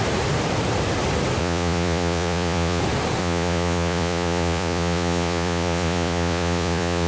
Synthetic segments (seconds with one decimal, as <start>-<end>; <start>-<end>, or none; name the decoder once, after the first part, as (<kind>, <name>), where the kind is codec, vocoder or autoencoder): 1.4-2.8 (vocoder, Vocos); 3.2-7.1